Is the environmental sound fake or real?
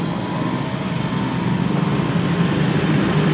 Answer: real